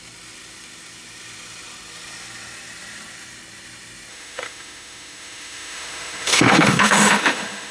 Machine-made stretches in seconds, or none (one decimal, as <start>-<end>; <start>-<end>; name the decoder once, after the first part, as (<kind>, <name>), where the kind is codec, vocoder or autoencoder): 4.1-7.7 (autoencoder, DAC-VAE)